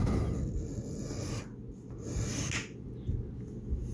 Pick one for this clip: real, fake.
real